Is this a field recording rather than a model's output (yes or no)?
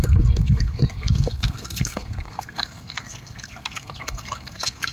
no